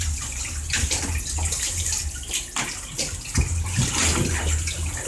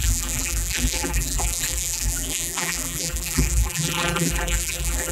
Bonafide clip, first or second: first